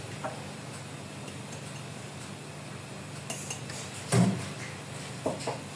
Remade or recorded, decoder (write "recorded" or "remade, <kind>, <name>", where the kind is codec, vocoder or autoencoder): recorded